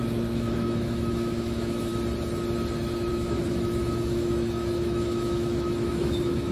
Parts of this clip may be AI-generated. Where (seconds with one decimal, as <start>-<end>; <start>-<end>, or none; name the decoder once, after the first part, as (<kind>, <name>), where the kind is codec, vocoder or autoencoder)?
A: 0.0-1.9 (autoencoder, DAC-VAE); 3.1-6.5